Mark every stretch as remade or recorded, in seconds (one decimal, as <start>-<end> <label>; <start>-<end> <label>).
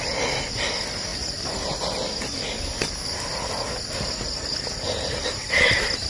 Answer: 0.0-6.1 recorded